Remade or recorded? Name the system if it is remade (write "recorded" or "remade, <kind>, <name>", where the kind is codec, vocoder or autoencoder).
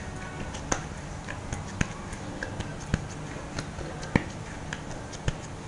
recorded